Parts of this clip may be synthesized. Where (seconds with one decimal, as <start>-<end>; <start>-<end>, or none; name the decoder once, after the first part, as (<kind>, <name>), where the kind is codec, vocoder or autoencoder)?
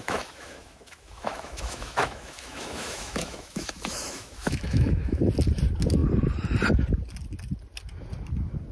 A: 0.0-5.2 (autoencoder, DAC-VAE)